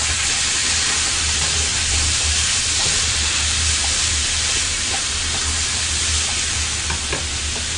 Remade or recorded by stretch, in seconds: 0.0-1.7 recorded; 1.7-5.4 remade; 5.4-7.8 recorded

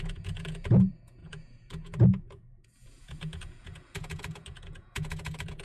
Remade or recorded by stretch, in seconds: 0.0-5.6 remade

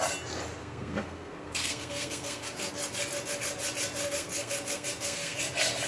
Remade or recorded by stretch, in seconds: 0.0-0.6 recorded; 0.6-2.7 remade; 2.7-4.0 recorded; 4.0-5.4 remade; 5.4-5.9 recorded